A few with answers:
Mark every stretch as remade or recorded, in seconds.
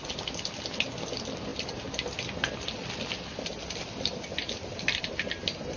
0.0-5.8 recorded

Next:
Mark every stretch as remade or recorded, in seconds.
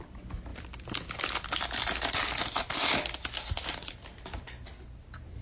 0.0-5.4 recorded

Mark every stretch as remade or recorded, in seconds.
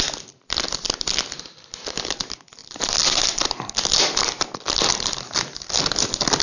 0.0-6.4 recorded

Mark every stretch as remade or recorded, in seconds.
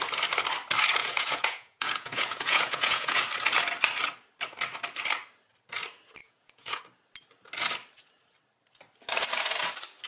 0.0-1.0 recorded; 1.0-3.2 remade; 3.2-6.2 recorded; 6.2-6.8 remade; 6.8-10.1 recorded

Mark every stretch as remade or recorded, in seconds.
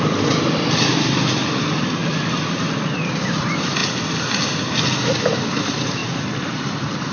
0.0-3.8 remade; 3.8-4.8 recorded; 4.8-7.1 remade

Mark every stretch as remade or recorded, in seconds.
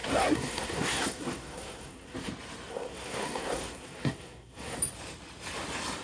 0.0-2.3 remade; 2.3-2.7 recorded; 2.7-4.8 remade; 4.8-6.0 recorded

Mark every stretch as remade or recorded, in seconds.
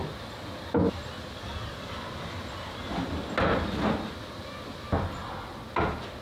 0.0-6.2 recorded